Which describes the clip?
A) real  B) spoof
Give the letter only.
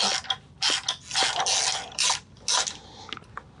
A